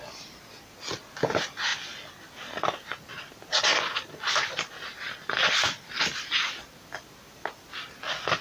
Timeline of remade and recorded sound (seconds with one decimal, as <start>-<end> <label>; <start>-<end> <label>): 0.0-8.4 recorded